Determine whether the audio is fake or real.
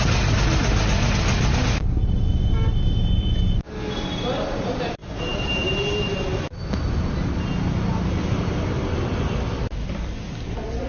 real